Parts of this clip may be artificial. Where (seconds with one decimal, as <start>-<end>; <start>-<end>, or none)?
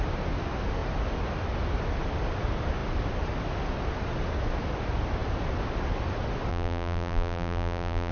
6.5-8.1